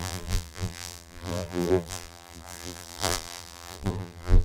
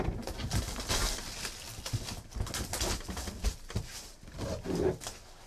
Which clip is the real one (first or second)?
second